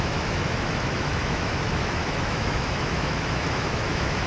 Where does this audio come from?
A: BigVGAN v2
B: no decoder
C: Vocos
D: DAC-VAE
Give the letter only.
D